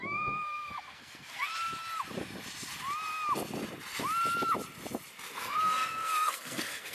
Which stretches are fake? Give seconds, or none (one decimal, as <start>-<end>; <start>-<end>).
0.0-1.5; 5.3-6.9